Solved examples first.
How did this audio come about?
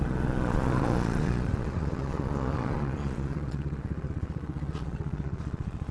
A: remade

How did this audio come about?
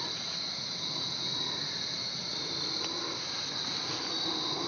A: recorded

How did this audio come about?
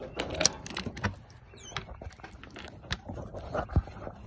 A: recorded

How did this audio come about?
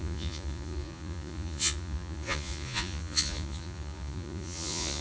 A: remade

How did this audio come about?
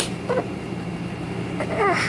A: recorded